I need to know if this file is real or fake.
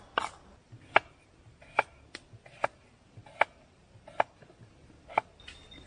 real